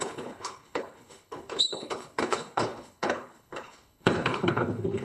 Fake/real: fake